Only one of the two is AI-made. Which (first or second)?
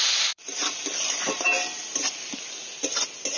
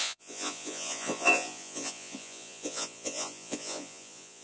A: second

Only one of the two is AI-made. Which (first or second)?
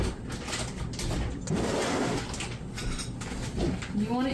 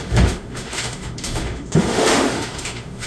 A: second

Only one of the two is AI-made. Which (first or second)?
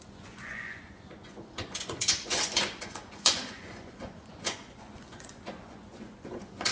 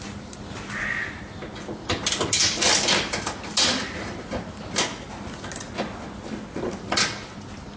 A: first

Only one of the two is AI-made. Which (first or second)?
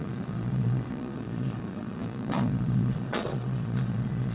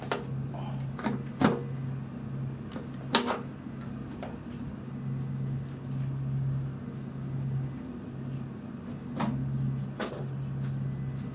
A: first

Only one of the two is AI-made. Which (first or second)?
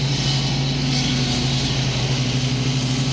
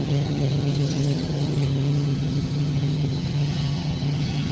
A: second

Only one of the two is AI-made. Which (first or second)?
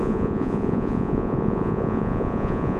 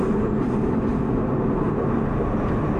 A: first